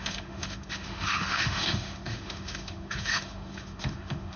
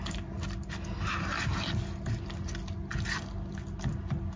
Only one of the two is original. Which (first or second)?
second